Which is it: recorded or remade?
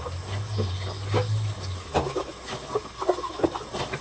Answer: recorded